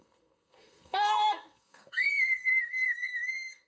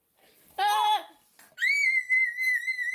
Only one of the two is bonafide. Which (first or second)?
second